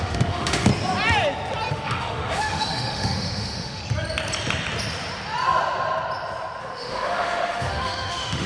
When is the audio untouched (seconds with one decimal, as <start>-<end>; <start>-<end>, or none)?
0.7-1.7; 3.8-6.6